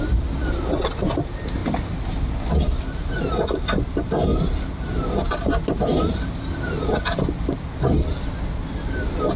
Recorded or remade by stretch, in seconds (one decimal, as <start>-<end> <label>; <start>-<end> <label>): 0.0-9.4 recorded

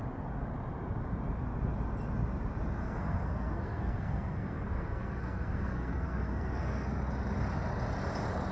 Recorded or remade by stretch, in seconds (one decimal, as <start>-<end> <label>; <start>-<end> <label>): 0.0-2.8 recorded; 2.8-7.0 remade; 7.0-8.5 recorded

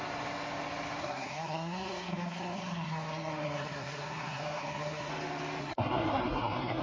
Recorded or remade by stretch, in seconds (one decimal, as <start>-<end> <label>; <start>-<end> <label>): 0.0-1.0 recorded; 1.0-5.1 remade; 5.1-5.6 recorded; 5.6-6.8 remade

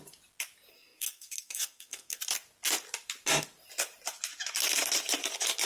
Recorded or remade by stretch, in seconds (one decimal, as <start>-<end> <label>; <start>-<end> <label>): 0.0-0.7 recorded; 0.7-2.2 remade; 2.2-5.7 recorded

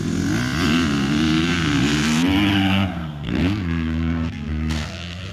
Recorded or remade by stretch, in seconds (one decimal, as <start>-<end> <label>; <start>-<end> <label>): 0.0-2.5 recorded; 2.5-5.3 remade

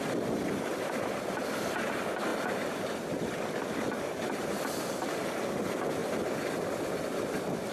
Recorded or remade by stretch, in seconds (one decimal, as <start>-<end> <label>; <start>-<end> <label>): 0.0-7.7 recorded

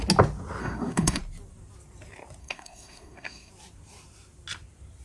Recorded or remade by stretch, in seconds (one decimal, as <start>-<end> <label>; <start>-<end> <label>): 0.0-0.6 recorded; 0.6-1.2 remade; 1.2-2.4 recorded; 2.4-3.5 remade; 3.5-5.0 recorded

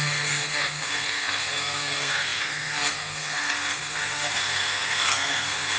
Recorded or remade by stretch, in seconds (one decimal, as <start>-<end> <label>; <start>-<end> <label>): 0.0-5.8 remade